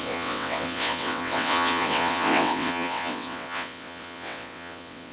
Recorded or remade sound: remade